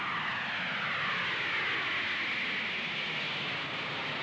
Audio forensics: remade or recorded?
recorded